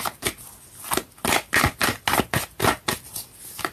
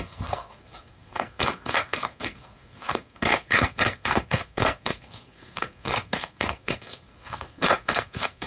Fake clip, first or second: second